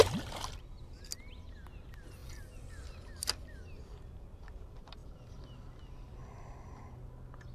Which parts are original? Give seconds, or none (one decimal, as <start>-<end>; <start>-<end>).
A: 0.0-7.5